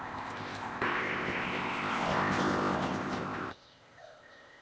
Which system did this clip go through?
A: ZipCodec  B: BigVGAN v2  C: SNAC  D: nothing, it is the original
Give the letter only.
A